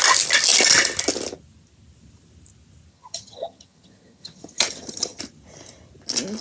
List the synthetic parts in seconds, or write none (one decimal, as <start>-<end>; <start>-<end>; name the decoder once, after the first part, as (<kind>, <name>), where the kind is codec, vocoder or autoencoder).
2.9-5.2 (vocoder, HiFi-GAN)